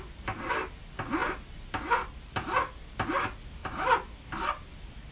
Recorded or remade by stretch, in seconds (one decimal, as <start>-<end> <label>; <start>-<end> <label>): 0.0-5.1 recorded